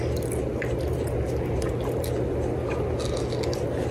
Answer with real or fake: real